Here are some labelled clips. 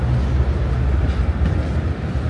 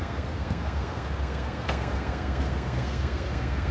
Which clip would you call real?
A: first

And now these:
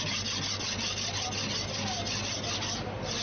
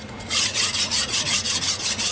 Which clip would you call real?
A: first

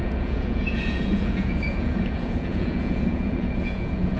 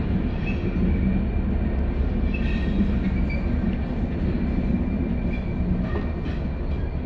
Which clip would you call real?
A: second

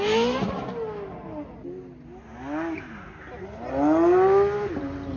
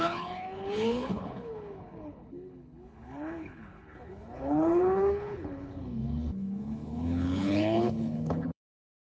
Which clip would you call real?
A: first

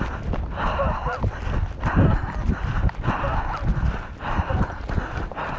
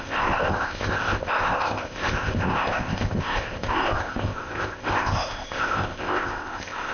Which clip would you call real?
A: first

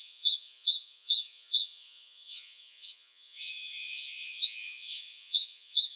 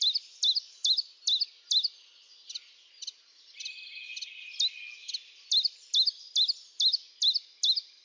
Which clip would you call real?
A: second